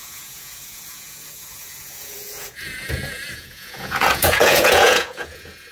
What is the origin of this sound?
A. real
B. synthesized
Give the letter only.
B